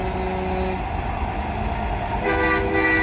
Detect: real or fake real